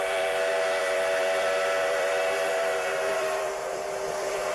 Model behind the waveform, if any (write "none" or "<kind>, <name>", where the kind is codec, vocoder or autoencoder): vocoder, BigVGAN v2